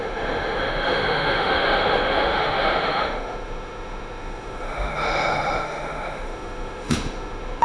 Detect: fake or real fake